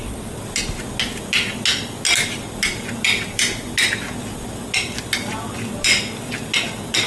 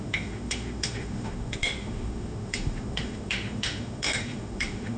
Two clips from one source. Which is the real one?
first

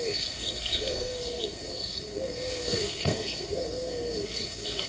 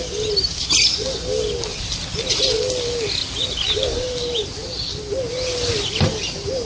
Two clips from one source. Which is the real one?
second